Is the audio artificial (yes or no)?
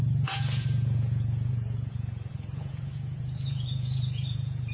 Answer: yes